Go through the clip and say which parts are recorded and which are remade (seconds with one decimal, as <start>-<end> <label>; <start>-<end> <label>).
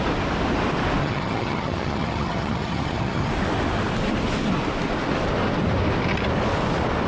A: 0.0-1.0 recorded; 1.0-3.3 remade; 3.3-7.1 recorded